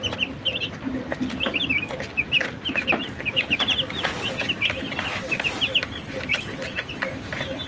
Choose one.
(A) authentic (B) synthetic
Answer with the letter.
A